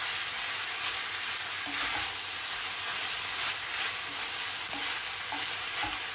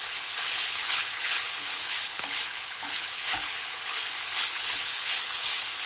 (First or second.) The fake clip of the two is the second